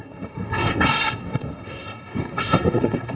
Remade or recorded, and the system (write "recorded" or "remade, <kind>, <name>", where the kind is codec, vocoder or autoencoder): remade, codec, SNAC